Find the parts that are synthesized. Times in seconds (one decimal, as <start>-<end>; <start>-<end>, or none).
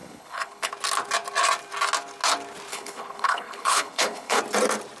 0.0-0.7; 2.7-4.4